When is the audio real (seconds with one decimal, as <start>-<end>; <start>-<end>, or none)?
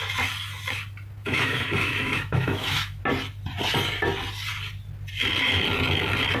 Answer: 0.0-1.2; 3.0-6.4